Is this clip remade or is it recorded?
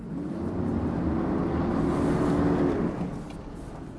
recorded